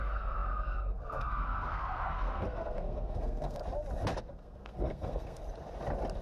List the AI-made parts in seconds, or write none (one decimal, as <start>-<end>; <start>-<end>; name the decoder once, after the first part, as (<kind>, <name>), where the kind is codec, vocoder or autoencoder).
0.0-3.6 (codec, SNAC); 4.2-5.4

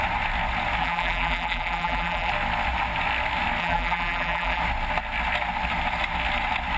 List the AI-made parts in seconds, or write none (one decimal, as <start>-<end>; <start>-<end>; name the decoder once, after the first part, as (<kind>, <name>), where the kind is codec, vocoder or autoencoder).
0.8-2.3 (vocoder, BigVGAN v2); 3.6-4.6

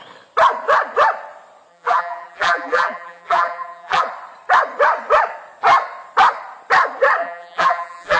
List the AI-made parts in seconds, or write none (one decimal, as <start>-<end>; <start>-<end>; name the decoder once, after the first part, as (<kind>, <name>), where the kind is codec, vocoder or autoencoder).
1.7-4.0 (vocoder, BigVGAN v2); 7.2-8.2